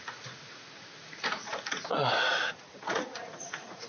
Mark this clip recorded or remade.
remade